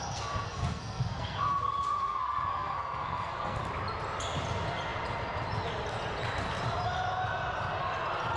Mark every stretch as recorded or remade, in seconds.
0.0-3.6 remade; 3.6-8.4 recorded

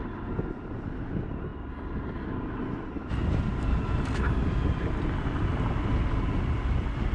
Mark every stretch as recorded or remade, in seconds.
0.0-7.1 recorded